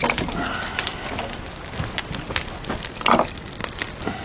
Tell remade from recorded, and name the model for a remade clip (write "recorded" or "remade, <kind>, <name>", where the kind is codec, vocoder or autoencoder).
recorded